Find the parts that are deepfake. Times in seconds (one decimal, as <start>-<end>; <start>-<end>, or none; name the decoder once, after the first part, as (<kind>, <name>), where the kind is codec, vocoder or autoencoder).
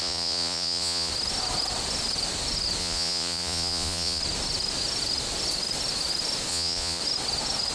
0.0-1.1 (vocoder, Vocos); 2.8-4.2; 6.5-7.0